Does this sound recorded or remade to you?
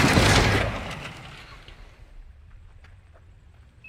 recorded